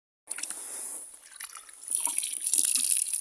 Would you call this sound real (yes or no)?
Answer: yes